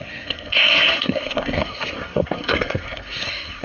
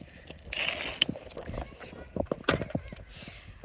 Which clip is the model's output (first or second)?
first